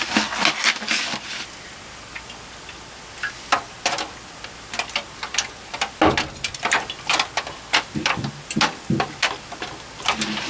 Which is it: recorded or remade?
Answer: recorded